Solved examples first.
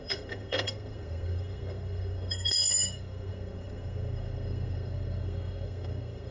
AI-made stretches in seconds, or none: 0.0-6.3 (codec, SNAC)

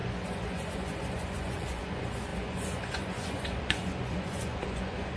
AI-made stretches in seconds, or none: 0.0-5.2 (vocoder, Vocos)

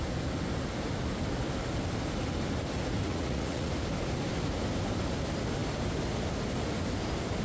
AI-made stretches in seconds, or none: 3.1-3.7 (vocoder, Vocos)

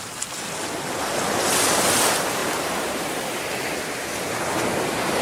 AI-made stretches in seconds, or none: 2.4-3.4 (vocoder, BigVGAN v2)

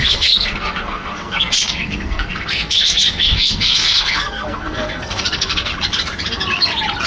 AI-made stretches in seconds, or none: 0.0-5.7 (codec, SNAC)